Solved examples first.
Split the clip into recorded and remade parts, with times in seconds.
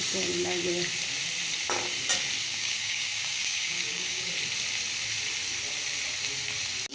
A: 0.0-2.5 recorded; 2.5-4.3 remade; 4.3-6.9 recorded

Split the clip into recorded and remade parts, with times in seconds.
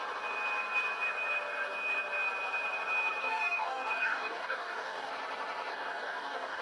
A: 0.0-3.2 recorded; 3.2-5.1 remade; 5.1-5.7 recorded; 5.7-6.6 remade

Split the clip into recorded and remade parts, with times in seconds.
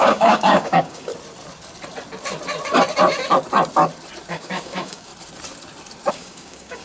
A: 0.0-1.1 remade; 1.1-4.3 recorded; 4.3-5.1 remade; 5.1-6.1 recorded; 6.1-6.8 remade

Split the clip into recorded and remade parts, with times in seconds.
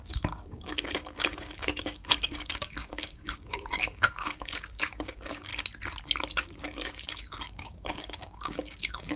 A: 0.0-5.5 remade; 5.5-6.4 recorded; 6.4-9.2 remade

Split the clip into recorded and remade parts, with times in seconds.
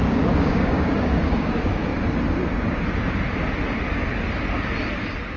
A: 0.0-1.9 remade; 1.9-5.4 recorded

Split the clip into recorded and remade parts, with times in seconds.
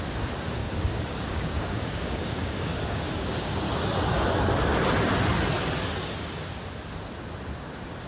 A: 0.0-0.6 recorded; 0.6-3.6 remade; 3.6-8.1 recorded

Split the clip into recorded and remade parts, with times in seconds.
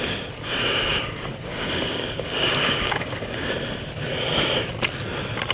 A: 0.0-1.5 recorded; 1.5-3.5 remade; 3.5-5.5 recorded